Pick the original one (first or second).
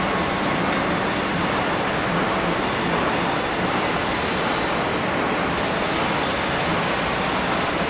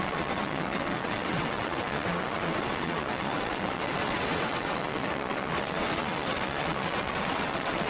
first